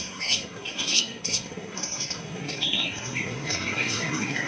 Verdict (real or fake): fake